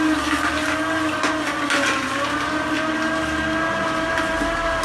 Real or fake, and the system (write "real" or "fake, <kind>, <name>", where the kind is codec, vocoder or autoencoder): real